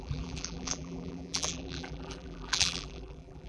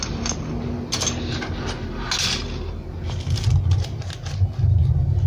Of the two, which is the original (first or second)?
second